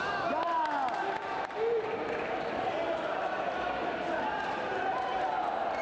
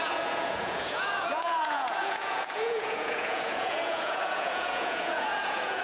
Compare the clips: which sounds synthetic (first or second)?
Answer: second